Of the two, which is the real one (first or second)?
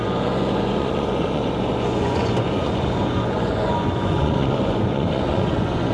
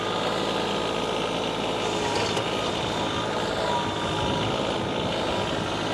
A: second